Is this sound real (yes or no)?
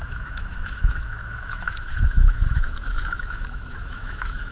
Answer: no